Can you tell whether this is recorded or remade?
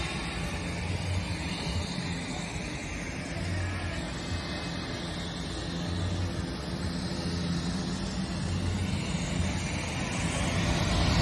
recorded